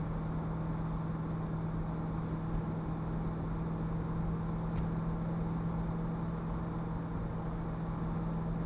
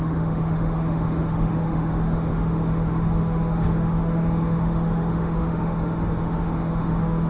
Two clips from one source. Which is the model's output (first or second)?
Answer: second